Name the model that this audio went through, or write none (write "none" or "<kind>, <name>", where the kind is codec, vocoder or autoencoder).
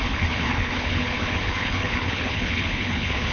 codec, HILCodec